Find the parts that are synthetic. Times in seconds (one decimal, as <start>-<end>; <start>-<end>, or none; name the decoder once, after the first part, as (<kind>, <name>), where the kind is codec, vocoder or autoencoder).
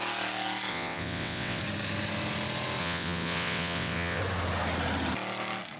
0.7-1.6 (vocoder, WaveNeXt); 2.8-4.2